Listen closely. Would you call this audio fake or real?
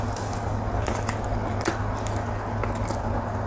real